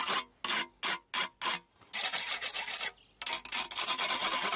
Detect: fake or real real